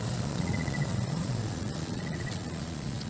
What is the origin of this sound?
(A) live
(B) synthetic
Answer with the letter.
B